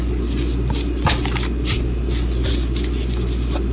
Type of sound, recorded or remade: recorded